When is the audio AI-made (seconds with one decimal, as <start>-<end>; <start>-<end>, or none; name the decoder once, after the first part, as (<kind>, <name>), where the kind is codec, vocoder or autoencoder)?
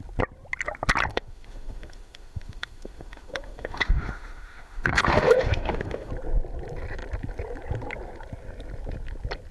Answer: 1.1-6.1 (autoencoder, DAC-VAE)